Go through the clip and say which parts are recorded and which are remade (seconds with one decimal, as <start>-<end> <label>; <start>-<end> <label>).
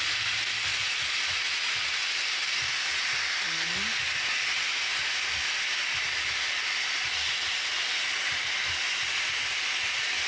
0.0-0.7 recorded; 0.7-1.9 remade; 1.9-10.3 recorded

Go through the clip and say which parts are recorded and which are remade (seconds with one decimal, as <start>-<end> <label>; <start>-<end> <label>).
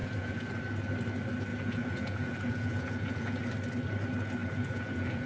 0.0-0.6 remade; 0.6-1.5 recorded; 1.5-3.4 remade; 3.4-4.4 recorded; 4.4-5.3 remade